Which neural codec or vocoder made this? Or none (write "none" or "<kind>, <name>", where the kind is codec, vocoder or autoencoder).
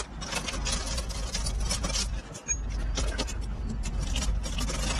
none